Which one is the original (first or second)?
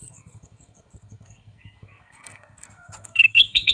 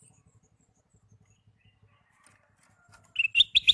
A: second